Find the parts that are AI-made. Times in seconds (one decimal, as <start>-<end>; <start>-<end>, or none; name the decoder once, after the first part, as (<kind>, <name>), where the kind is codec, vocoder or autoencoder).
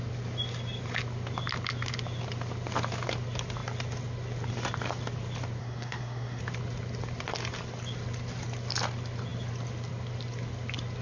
5.6-6.4 (codec, SNAC)